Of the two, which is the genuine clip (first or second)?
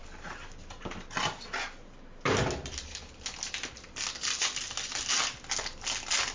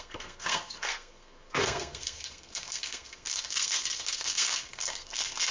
first